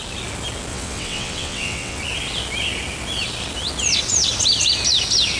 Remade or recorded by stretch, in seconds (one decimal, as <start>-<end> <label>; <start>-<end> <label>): 0.0-0.7 recorded; 0.7-2.0 remade; 2.0-5.4 recorded